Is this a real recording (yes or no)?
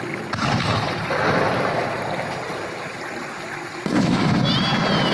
yes